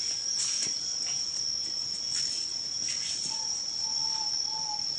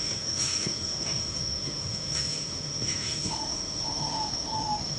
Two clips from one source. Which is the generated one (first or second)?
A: second